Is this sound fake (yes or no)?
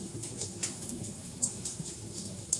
yes